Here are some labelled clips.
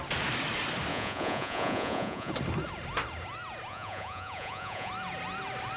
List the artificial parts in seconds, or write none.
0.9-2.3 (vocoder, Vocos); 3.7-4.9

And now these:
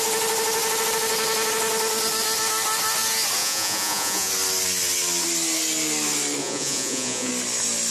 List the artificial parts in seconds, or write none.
3.4-4.3 (vocoder, Vocos); 6.4-7.3

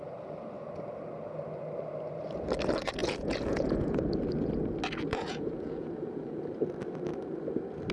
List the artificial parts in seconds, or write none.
3.0-4.0 (vocoder, Vocos); 5.1-6.4

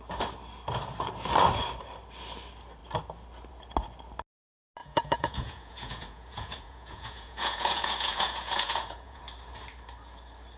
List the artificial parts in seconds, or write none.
4.8-9.2 (vocoder, Vocos)

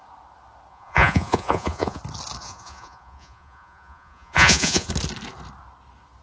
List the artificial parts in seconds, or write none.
0.7-2.0 (vocoder, Vocos); 2.4-4.9

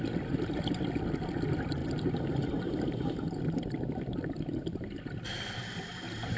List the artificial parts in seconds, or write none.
none

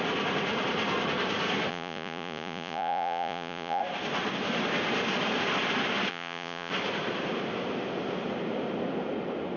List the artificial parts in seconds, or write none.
1.7-3.8 (vocoder, Vocos); 6.1-6.7